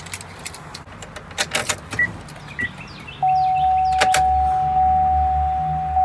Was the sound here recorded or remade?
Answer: recorded